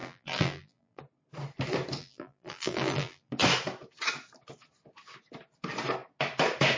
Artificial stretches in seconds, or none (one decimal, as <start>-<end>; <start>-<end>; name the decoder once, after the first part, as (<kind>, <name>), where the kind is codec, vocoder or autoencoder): 0.0-1.0 (vocoder, BigVGAN v2); 2.0-3.3